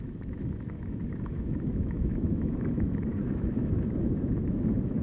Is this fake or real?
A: fake